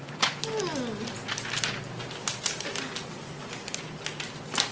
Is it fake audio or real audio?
real